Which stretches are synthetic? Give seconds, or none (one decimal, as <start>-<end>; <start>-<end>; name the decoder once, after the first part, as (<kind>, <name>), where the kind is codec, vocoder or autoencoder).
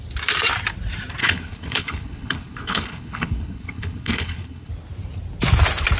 1.2-4.7 (codec, HILCodec)